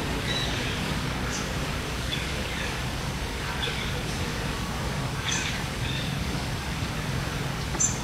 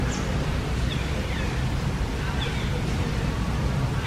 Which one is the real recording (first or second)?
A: second